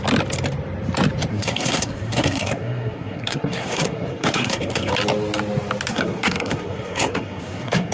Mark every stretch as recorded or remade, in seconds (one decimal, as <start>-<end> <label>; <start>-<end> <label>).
0.0-1.3 recorded; 1.3-4.9 remade; 4.9-5.9 recorded; 5.9-7.9 remade